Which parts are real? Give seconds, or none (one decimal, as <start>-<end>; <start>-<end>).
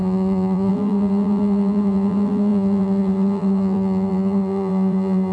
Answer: none